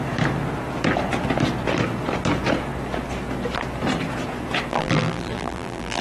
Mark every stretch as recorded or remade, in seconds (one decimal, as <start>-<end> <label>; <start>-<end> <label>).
0.0-4.7 recorded; 4.7-6.0 remade